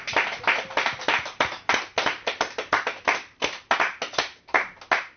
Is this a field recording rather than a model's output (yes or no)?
yes